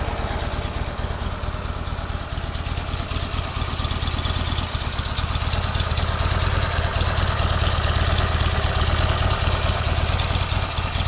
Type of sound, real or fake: real